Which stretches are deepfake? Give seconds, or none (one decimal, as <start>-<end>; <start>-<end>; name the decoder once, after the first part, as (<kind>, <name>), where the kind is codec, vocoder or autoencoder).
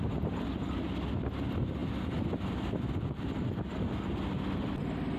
none